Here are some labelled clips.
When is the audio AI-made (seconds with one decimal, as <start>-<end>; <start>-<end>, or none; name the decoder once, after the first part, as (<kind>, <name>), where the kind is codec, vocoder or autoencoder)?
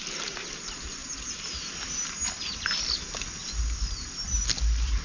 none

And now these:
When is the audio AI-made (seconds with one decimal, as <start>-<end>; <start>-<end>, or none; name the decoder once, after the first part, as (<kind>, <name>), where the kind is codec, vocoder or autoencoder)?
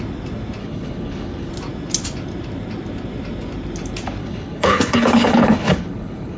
0.6-1.5 (codec, HILCodec); 4.2-6.4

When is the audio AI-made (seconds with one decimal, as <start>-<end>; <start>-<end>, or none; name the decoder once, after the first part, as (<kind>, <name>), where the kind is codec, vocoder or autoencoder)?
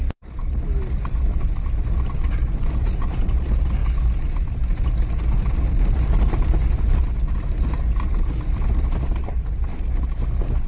none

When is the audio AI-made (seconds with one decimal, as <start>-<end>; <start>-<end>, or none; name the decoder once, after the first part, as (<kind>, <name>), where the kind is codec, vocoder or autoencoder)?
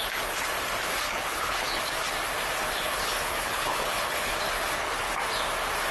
0.9-1.9 (codec, HILCodec); 2.7-5.1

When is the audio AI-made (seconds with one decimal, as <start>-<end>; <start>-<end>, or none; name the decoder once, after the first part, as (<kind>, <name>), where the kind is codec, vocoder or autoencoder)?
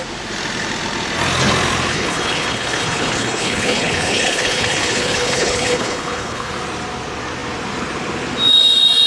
1.9-6.5 (codec, HILCodec)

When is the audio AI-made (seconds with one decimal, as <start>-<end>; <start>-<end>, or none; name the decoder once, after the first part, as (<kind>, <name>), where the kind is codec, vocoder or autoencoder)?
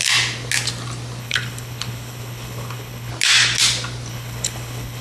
1.2-3.1 (codec, HILCodec); 4.1-5.0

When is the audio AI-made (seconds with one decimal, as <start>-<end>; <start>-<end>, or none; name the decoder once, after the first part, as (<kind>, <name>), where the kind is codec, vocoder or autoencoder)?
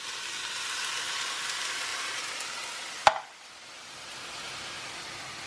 none